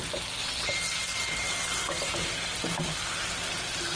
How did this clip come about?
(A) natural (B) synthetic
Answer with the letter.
A